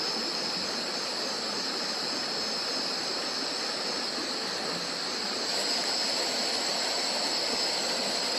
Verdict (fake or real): real